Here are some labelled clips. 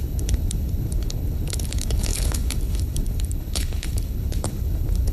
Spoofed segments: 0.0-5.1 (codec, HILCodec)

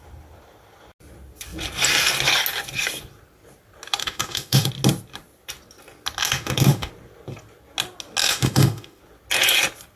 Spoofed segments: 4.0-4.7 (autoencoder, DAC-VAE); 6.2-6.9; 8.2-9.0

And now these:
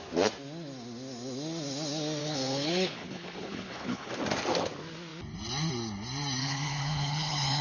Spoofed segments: 2.2-4.1 (codec, HILCodec); 6.4-7.6

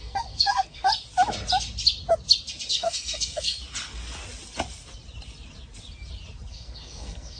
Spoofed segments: 0.0-0.9 (codec, SNAC); 2.7-3.6; 6.5-7.4

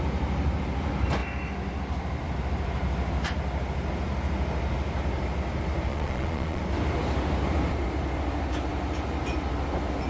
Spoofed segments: 5.9-6.6 (vocoder, Vocos)

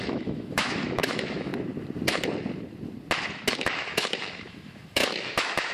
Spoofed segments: 0.0-1.5 (autoencoder, DAC-VAE); 3.5-5.7

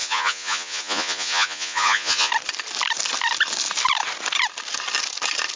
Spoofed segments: 0.0-2.3 (vocoder, Vocos)